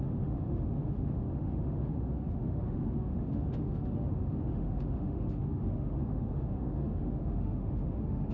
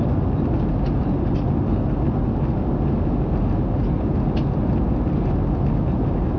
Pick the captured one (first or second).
second